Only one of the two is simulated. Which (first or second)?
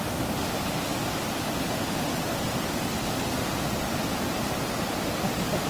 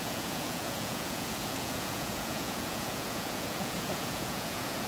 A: second